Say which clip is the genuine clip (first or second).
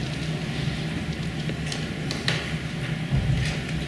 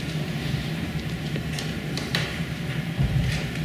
first